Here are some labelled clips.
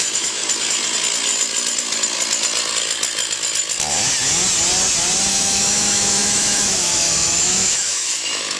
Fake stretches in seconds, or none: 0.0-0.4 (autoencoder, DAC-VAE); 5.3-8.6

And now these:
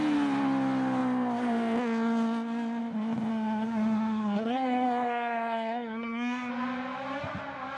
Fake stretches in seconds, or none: 3.3-6.5 (codec, SNAC)

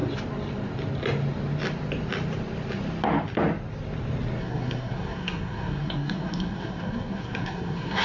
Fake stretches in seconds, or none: 4.4-8.0 (codec, SNAC)

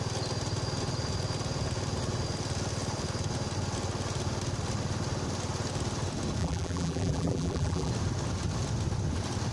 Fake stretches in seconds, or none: 6.4-7.9 (vocoder, BigVGAN v2)

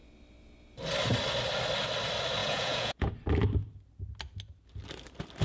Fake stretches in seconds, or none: 2.4-3.1 (vocoder, Vocos)

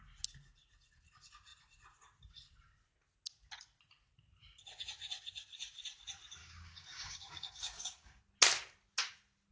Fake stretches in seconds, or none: 6.4-8.2 (codec, DAC)

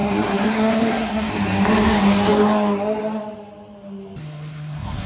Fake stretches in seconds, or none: 0.0-1.3 (codec, SNAC); 4.2-5.1

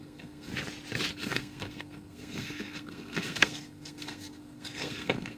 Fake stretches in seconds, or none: 0.0-0.5 (codec, SNAC); 1.1-5.4